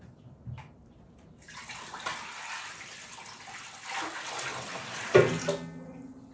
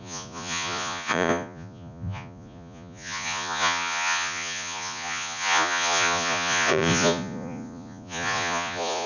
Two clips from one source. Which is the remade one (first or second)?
second